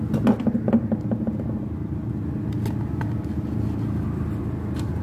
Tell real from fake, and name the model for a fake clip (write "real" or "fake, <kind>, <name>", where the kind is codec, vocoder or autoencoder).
real